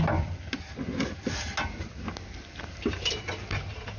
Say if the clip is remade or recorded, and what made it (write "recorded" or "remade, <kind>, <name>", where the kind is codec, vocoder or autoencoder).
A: recorded